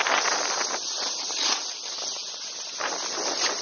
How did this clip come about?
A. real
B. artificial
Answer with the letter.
A